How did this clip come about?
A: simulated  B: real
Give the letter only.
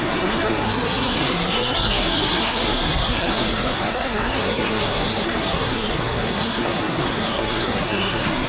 A